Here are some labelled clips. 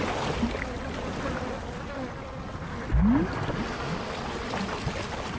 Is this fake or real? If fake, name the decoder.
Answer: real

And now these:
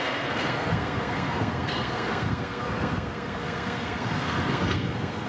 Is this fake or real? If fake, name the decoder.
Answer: fake, codec, SNAC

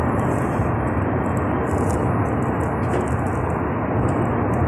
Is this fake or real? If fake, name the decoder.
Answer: real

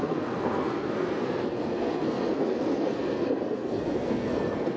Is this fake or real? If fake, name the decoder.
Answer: fake, codec, SNAC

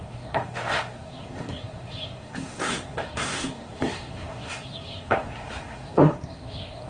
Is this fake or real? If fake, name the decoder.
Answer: fake, codec, SNAC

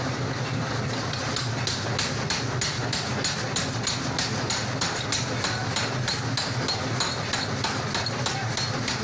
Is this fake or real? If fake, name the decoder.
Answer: real